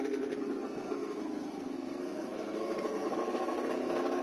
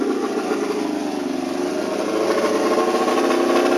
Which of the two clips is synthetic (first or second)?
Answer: first